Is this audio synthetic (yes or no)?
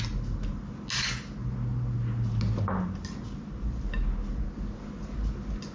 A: no